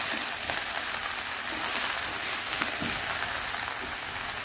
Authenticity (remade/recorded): recorded